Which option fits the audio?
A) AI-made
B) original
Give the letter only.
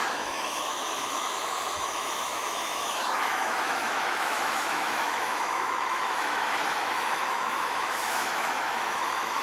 A